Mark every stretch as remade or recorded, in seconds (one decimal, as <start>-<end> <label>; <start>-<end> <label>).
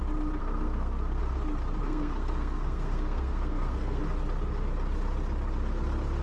0.0-0.4 recorded; 0.4-1.2 remade; 1.2-1.8 recorded; 1.8-4.0 remade; 4.0-6.2 recorded